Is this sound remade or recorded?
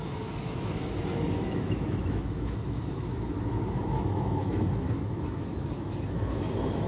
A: remade